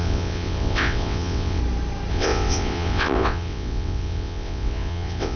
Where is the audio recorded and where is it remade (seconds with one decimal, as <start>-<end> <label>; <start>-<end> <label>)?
0.0-1.6 remade; 1.6-2.1 recorded; 2.1-5.4 remade